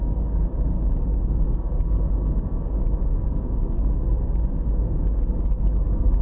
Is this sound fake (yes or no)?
yes